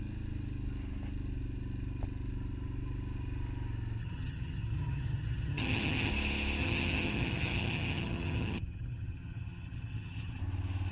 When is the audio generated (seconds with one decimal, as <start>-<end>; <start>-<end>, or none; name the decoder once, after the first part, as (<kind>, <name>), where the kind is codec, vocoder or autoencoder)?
4.0-6.1 (vocoder, HiFi-GAN); 6.6-10.4